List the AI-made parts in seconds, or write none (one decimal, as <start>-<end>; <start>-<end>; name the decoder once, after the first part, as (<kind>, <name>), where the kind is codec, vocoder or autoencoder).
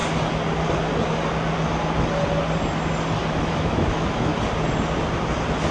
3.4-4.3 (autoencoder, DAC-VAE)